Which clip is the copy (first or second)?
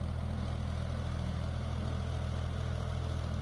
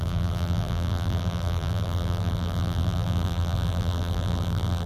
second